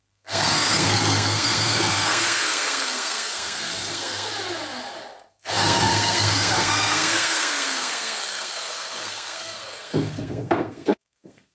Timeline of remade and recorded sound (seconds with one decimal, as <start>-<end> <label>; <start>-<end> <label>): 0.0-4.3 remade; 4.3-5.3 recorded; 5.3-11.5 remade